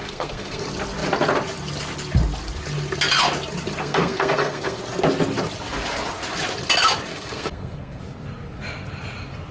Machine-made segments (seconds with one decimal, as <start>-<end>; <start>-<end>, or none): 0.0-0.6; 3.8-4.8; 7.1-8.0